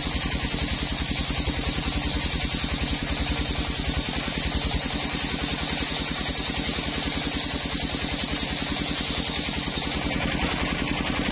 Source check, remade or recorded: recorded